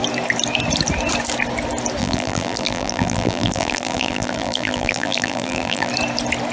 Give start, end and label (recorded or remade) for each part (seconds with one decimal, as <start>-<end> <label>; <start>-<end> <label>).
0.0-2.0 recorded; 2.0-5.9 remade; 5.9-6.5 recorded